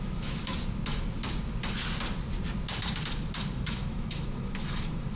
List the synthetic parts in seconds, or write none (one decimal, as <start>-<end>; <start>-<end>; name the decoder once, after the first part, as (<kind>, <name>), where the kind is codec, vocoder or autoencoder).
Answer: 0.0-0.5 (autoencoder, DAC-VAE); 3.6-5.2